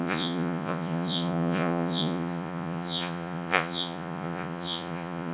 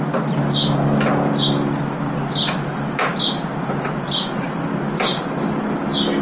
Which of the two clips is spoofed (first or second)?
first